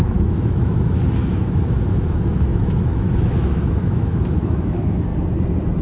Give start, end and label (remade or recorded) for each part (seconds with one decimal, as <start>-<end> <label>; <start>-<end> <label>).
0.0-5.1 remade; 5.1-5.8 recorded